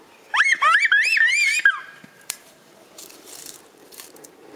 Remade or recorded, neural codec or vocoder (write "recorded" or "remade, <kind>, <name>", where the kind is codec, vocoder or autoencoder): remade, vocoder, BigVGAN v2